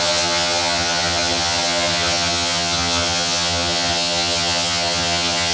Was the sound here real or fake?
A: fake